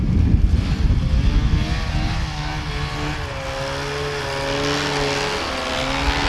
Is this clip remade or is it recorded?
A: recorded